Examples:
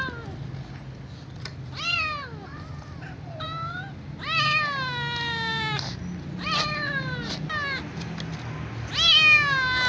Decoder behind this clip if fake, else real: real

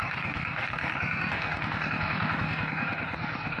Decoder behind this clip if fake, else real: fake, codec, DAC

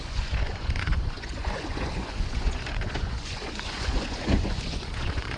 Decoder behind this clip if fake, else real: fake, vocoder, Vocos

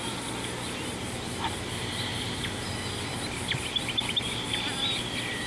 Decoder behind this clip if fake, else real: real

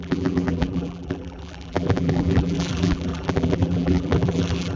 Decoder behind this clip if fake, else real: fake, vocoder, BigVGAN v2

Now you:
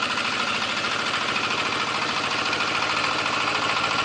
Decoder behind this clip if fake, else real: real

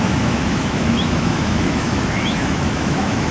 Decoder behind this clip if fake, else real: fake, autoencoder, DAC-VAE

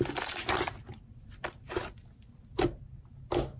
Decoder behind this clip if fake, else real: real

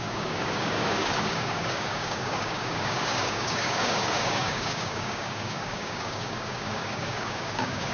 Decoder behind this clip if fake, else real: fake, codec, DAC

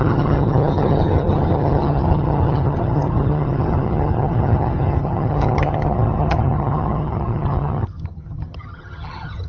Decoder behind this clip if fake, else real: fake, vocoder, HiFi-GAN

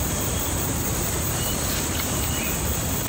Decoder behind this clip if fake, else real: fake, vocoder, BigVGAN v2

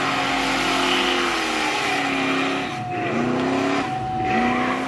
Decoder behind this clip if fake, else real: real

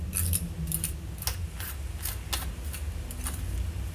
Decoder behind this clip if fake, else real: real